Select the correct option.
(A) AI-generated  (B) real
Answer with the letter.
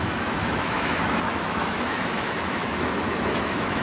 A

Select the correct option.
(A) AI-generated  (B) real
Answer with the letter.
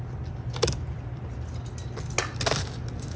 B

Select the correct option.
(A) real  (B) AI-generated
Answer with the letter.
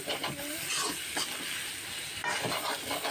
A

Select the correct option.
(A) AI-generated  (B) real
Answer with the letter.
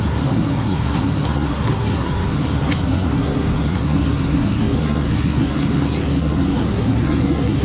A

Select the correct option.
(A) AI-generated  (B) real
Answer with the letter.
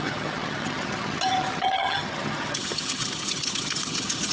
A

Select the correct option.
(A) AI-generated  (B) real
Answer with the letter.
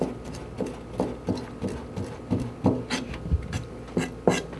B